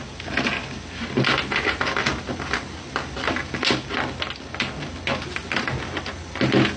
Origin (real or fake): real